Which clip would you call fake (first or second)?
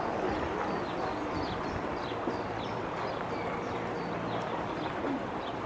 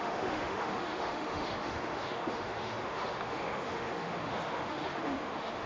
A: second